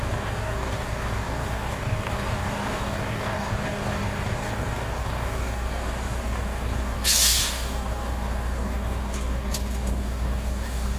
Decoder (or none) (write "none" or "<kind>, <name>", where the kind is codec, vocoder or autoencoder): codec, DAC